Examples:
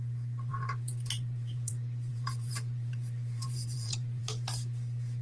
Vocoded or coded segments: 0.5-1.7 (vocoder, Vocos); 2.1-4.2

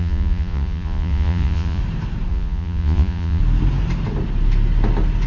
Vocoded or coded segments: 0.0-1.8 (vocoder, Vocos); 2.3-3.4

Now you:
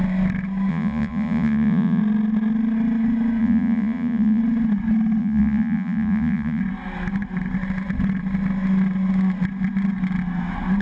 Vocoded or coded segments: 0.7-2.0 (vocoder, Vocos); 3.4-4.4; 5.2-6.6

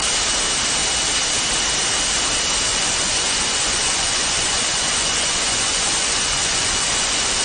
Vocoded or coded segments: 2.7-7.4 (vocoder, Vocos)

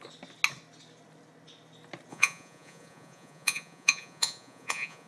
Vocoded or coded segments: 2.1-5.1 (vocoder, Vocos)

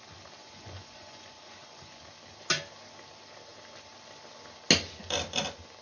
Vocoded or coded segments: 0.4-2.0 (vocoder, Vocos)

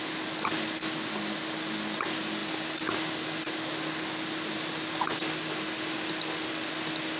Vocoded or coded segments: none